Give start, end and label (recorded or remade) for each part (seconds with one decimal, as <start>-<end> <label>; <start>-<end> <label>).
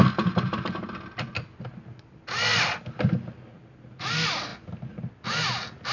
0.0-5.9 recorded